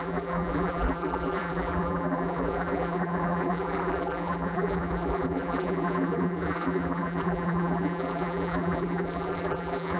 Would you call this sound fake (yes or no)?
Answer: yes